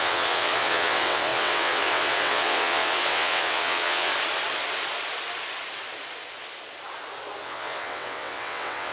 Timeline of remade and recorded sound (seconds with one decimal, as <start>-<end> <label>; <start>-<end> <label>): 0.0-4.1 remade; 4.1-7.4 recorded; 7.4-8.9 remade